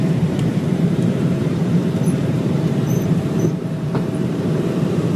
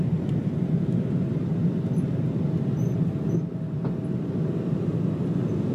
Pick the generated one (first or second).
first